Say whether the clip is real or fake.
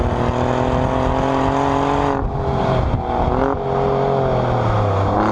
real